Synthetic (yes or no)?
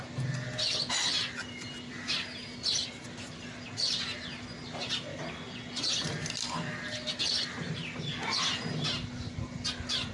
no